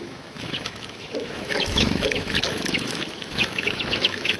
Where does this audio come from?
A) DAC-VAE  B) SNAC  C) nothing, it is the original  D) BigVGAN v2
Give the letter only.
A